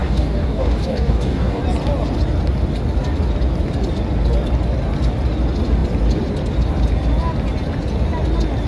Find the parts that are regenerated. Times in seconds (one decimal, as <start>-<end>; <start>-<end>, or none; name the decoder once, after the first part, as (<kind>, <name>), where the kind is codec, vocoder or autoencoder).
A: 0.0-1.6 (codec, DAC)